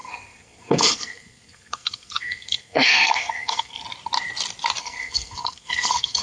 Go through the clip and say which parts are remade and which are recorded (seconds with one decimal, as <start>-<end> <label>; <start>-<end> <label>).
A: 0.0-3.8 remade; 3.8-4.8 recorded; 4.8-6.2 remade